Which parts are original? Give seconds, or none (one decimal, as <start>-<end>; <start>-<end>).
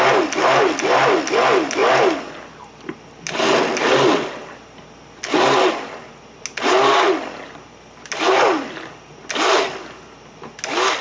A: 0.0-11.0